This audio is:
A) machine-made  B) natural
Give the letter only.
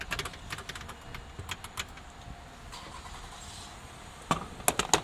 B